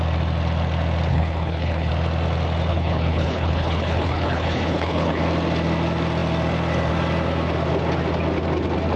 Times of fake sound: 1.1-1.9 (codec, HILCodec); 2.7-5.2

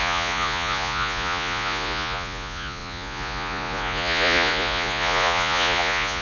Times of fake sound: 0.0-6.2 (vocoder, Vocos)

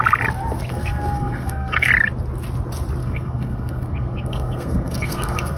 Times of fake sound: 0.7-1.9 (codec, SNAC); 3.0-5.6

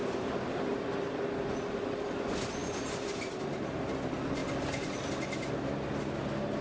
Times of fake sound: none